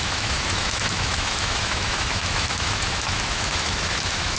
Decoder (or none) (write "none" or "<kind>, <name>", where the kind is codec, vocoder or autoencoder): autoencoder, DAC-VAE